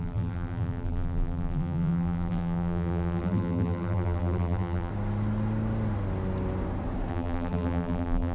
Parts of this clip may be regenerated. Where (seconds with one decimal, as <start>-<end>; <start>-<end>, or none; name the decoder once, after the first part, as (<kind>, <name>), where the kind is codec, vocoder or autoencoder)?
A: 0.0-4.9 (vocoder, BigVGAN v2); 7.1-8.3

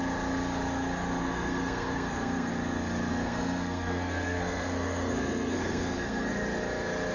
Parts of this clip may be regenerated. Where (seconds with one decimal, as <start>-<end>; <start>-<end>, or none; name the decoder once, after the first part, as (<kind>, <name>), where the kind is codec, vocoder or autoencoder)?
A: 1.2-2.5 (codec, SNAC); 3.1-6.3

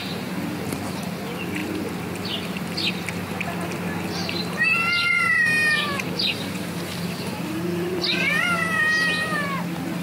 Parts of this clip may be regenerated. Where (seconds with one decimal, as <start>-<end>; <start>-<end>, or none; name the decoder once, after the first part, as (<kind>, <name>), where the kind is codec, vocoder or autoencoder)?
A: none

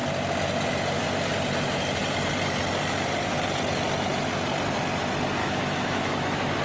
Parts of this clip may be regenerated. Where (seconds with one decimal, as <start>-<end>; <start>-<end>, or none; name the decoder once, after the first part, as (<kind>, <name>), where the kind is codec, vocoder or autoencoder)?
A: 5.4-6.6 (autoencoder, DAC-VAE)